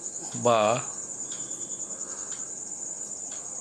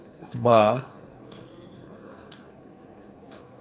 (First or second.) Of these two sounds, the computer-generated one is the second